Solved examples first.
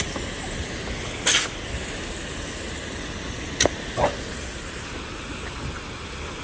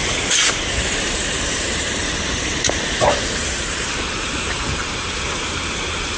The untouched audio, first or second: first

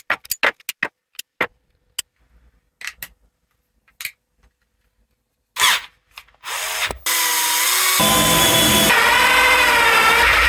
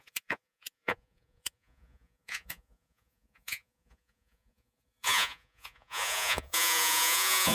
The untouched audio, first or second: first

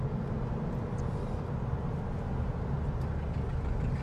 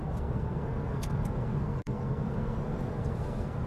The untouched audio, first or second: first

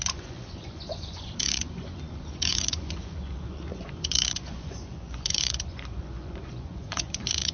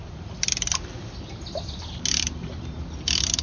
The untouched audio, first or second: second